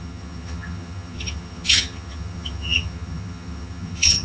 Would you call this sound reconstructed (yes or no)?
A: yes